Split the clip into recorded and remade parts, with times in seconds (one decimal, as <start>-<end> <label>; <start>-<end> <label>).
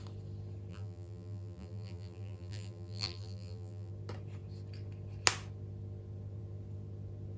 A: 0.0-0.7 recorded; 0.7-3.9 remade; 3.9-7.4 recorded